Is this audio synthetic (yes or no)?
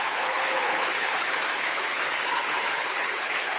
yes